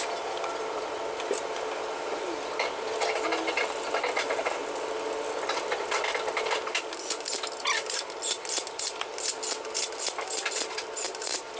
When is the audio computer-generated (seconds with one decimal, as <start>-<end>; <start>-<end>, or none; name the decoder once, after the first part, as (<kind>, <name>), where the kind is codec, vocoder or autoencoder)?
none